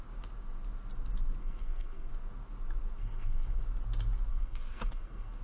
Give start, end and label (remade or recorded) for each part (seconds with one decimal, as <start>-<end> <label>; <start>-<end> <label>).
0.0-1.4 recorded; 1.4-2.1 remade; 2.1-3.0 recorded; 3.0-3.6 remade; 3.6-4.3 recorded; 4.3-5.4 remade